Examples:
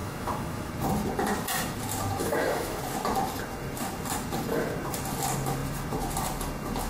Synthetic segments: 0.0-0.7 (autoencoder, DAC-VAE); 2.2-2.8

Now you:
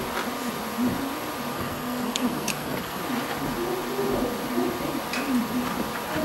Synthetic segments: 1.5-3.0 (codec, SNAC)

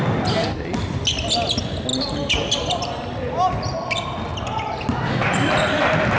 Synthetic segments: none

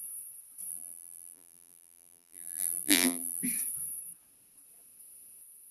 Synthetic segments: 0.7-3.4 (vocoder, BigVGAN v2)

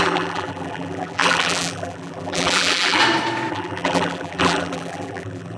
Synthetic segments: 0.0-3.0 (vocoder, BigVGAN v2); 3.5-5.6